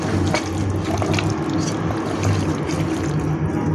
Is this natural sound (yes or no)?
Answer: yes